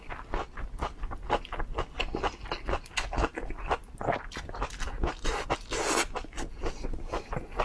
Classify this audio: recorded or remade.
recorded